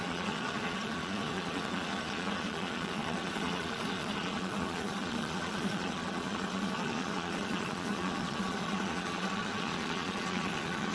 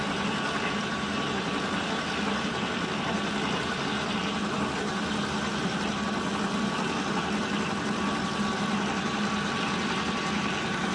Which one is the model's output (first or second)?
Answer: first